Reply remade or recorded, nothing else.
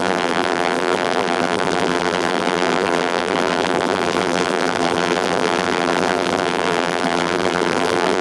remade